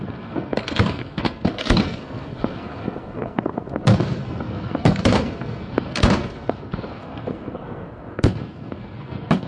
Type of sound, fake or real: fake